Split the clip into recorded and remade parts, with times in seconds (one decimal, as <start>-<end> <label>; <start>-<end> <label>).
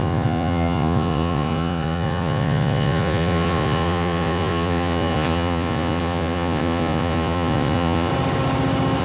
0.0-8.1 remade; 8.1-9.0 recorded